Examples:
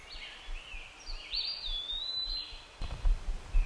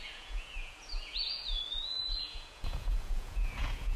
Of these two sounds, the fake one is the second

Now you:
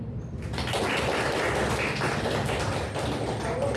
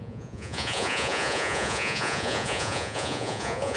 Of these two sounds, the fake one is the second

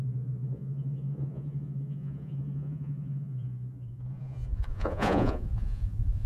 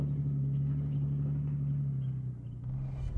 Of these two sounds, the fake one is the first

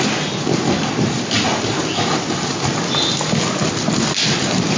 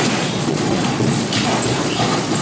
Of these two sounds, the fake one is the second